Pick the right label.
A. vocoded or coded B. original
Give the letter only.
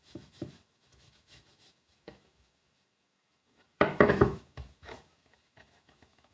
A